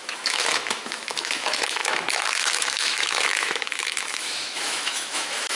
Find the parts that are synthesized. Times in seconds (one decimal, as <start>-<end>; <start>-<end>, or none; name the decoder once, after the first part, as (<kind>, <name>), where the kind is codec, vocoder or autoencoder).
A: 0.0-5.6 (autoencoder, DAC-VAE)